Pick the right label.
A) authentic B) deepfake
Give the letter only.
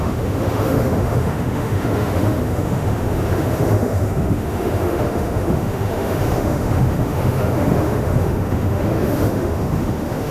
B